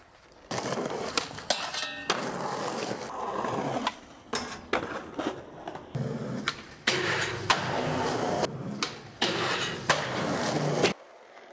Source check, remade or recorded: recorded